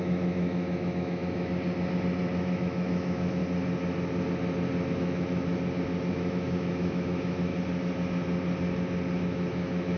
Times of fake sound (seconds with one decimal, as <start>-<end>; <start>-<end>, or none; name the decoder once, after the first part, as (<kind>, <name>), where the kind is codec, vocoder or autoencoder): 0.0-1.5 (autoencoder, DAC-VAE); 2.3-3.4; 4.9-5.5; 6.1-7.5; 9.2-10.0